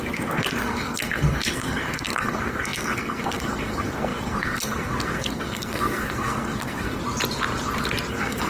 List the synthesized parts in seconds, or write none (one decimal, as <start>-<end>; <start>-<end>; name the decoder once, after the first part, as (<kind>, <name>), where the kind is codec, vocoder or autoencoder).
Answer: 0.0-7.0 (codec, SNAC); 8.1-8.5